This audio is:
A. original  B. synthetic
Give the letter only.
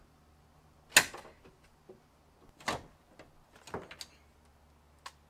A